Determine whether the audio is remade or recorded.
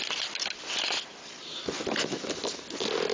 recorded